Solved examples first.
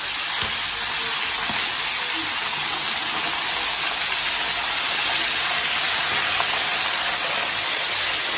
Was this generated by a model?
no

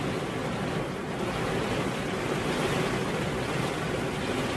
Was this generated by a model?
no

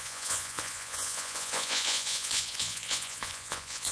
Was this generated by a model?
yes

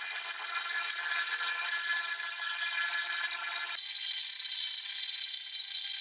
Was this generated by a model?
no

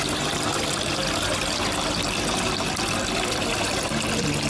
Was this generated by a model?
no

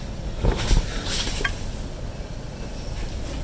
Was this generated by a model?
no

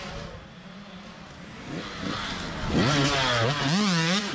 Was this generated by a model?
no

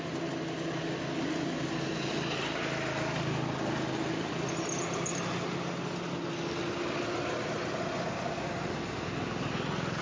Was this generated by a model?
no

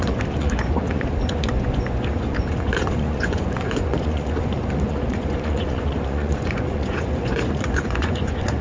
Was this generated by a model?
yes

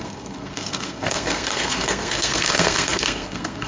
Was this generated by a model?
yes